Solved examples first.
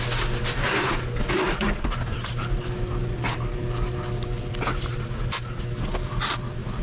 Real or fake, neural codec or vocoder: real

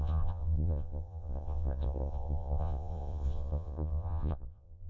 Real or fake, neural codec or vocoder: fake, vocoder, Vocos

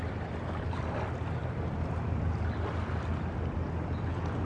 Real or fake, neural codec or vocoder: real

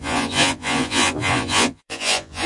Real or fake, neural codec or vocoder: fake, vocoder, Vocos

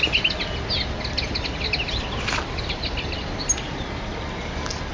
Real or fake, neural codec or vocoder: real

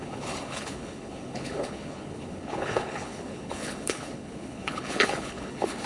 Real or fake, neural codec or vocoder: fake, codec, HILCodec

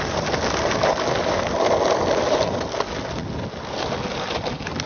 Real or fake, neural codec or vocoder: real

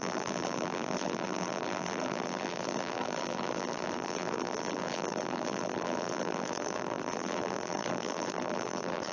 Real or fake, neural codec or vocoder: fake, vocoder, BigVGAN v2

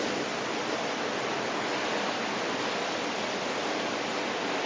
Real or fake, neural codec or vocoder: real